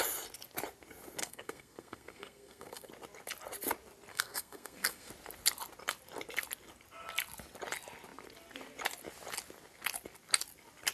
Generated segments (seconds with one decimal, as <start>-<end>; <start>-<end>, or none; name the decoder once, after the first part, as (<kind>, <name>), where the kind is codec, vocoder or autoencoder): 1.2-2.9 (codec, SNAC); 4.1-5.1